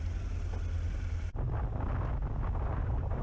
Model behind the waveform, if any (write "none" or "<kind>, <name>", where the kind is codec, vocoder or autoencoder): none